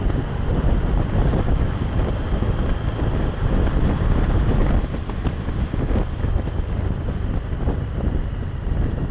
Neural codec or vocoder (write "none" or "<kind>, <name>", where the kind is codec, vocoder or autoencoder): none